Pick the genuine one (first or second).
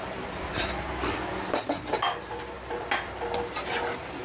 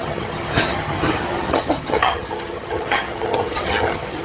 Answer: first